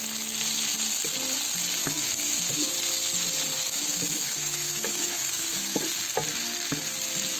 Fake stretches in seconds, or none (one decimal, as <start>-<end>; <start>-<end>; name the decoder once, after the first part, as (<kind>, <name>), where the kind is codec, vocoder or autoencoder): 1.8-2.7 (autoencoder, DAC-VAE); 3.5-5.8